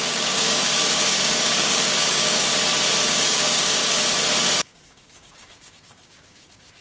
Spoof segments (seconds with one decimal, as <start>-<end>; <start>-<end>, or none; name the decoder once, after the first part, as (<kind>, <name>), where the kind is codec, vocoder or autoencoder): 0.0-2.5 (codec, DAC); 3.1-3.8; 4.6-6.8